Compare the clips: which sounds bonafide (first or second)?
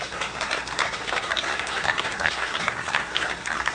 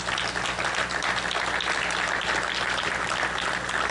second